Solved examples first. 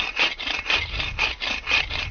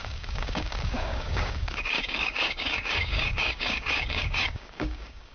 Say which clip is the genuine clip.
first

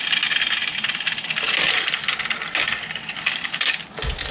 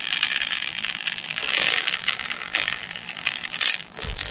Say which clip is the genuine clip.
first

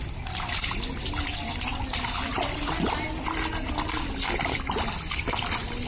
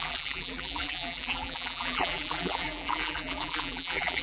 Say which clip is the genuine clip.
first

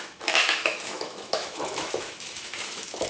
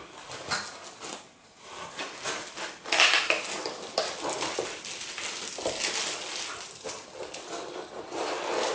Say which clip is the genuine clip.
second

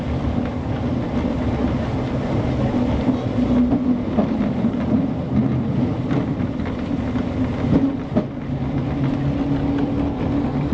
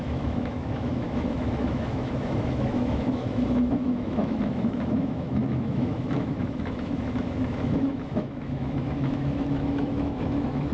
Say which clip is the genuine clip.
first